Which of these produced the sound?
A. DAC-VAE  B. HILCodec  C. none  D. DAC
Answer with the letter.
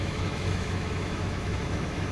A